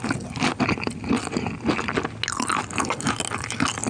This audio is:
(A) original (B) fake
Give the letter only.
A